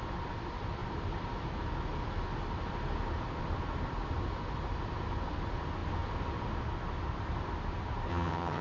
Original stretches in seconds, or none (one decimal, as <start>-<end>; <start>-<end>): 0.0-8.1